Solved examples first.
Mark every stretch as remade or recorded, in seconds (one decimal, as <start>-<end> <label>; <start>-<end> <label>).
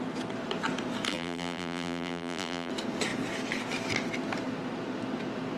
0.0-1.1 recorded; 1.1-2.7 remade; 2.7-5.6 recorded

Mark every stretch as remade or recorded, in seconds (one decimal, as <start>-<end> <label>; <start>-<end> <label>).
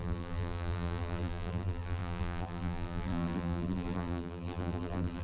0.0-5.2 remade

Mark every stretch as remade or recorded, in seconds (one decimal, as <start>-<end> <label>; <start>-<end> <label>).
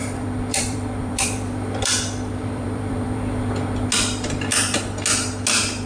0.0-3.5 remade; 3.5-5.9 recorded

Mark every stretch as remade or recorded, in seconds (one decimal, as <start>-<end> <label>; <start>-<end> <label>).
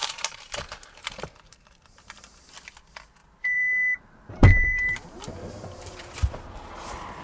0.0-2.4 remade; 2.4-3.2 recorded; 3.2-6.5 remade; 6.5-7.2 recorded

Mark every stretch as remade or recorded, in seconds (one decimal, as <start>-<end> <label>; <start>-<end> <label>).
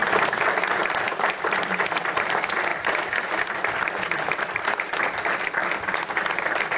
0.0-5.6 remade; 5.6-6.2 recorded; 6.2-6.8 remade